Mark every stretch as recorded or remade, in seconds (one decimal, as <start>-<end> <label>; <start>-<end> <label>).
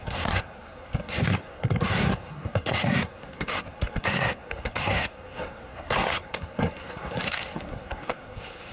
0.0-8.7 remade